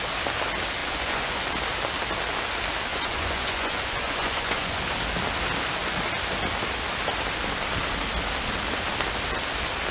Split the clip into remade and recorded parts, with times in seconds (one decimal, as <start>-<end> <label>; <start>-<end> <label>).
0.0-0.8 recorded; 0.8-1.4 remade; 1.4-2.9 recorded; 2.9-4.8 remade; 4.8-9.9 recorded